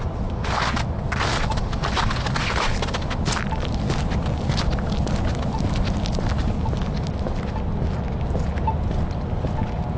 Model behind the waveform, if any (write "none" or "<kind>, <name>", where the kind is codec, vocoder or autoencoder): none